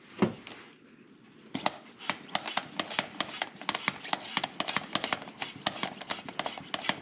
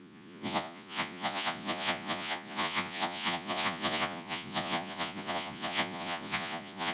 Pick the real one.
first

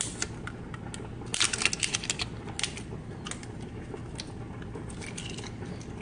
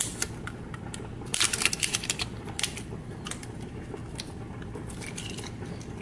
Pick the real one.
first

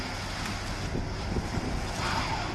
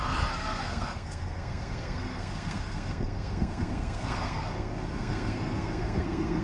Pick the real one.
first